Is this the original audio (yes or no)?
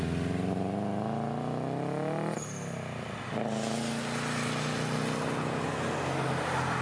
yes